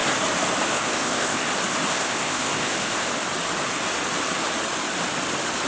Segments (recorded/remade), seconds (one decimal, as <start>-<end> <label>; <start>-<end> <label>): 0.0-0.7 recorded; 0.7-1.4 remade; 1.4-1.9 recorded; 1.9-3.1 remade; 3.1-5.7 recorded